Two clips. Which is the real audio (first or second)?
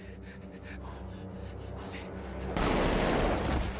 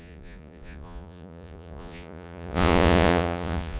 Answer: first